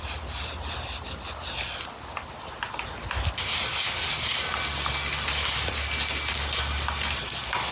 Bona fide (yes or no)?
yes